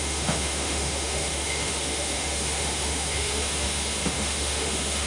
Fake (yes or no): yes